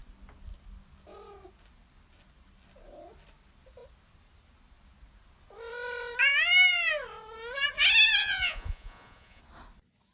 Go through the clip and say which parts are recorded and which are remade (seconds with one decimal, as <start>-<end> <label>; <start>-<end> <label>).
0.0-8.2 recorded; 8.2-9.4 remade; 9.4-10.1 recorded

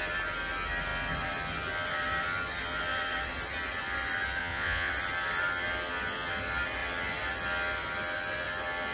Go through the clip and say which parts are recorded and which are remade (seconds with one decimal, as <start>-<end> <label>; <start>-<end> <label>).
0.0-4.4 recorded; 4.4-4.9 remade; 4.9-8.9 recorded

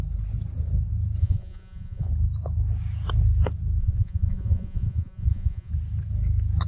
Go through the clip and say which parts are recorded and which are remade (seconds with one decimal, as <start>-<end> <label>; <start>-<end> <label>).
0.0-1.2 recorded; 1.2-2.1 remade; 2.1-3.8 recorded; 3.8-5.7 remade; 5.7-6.7 recorded

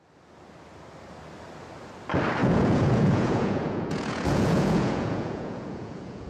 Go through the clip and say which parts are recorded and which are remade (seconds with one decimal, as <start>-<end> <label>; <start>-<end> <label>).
0.0-2.4 recorded; 2.4-6.3 remade

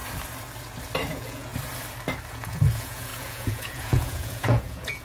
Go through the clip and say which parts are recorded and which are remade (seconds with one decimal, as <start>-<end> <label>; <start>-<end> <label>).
0.0-1.1 recorded; 1.1-1.5 remade; 1.5-2.3 recorded; 2.3-5.0 remade